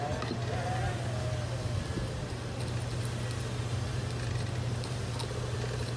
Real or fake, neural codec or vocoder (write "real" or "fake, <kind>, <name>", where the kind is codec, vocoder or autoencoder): real